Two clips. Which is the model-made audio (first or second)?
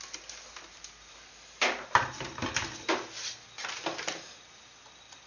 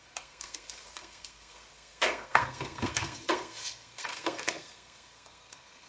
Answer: second